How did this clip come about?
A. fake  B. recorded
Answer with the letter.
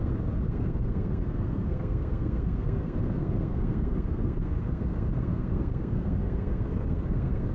A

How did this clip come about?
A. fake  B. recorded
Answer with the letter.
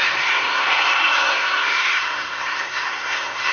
A